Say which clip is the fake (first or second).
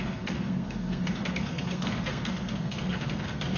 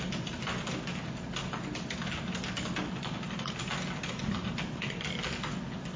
first